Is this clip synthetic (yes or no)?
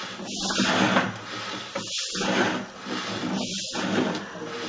no